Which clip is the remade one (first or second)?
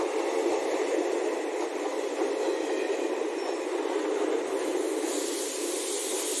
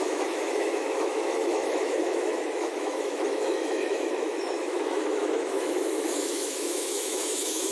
second